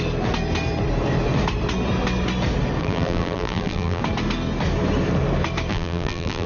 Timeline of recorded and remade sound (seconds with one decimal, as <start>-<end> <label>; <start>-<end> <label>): 0.0-2.8 recorded; 2.8-4.0 remade; 4.0-5.7 recorded; 5.7-6.5 remade